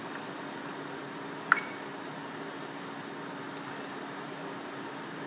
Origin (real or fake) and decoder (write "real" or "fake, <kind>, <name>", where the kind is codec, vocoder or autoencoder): real